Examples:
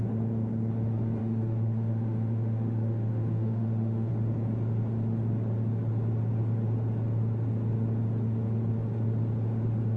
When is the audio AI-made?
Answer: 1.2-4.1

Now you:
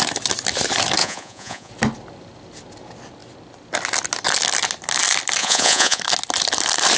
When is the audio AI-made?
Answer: 1.0-1.7; 5.4-6.0

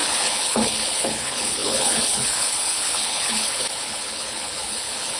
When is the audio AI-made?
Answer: 0.0-5.2

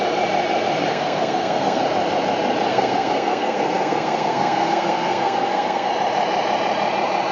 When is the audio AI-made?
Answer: 0.9-1.8; 2.7-5.9

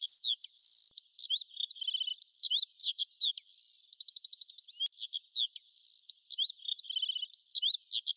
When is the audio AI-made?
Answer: 2.8-3.3